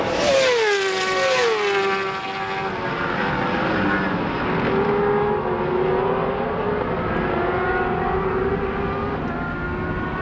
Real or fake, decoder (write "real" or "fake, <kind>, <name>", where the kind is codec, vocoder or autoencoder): real